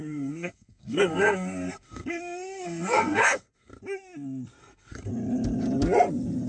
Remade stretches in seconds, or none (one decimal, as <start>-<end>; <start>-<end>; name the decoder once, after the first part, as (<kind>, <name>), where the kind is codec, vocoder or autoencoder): 0.0-3.7 (codec, SNAC); 4.6-5.1

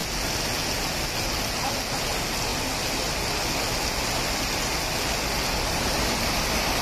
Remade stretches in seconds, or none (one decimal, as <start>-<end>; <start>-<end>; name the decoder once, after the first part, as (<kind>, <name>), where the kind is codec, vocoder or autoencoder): none

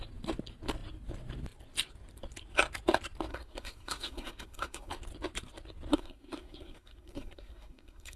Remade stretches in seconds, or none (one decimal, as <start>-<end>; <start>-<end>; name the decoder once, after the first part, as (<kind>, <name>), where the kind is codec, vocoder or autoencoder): 3.3-4.9 (codec, SNAC); 5.9-8.2

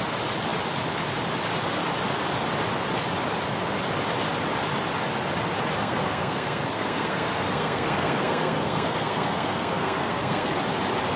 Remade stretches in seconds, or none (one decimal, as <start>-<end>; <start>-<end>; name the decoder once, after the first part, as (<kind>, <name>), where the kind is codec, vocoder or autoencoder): 5.8-10.5 (codec, SNAC)

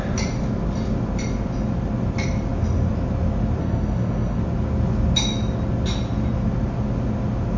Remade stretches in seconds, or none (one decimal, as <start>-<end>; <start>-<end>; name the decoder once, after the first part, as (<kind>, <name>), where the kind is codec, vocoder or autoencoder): 3.6-4.4 (codec, SNAC)

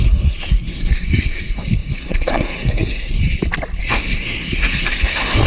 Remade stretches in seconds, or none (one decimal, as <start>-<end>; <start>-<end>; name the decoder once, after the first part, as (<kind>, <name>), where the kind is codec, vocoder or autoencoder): 0.0-3.2 (codec, SNAC); 3.8-5.5

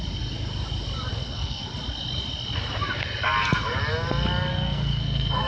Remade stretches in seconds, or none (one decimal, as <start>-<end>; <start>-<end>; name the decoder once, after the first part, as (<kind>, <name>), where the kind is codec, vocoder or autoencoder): 1.1-1.7 (codec, SNAC); 4.5-5.5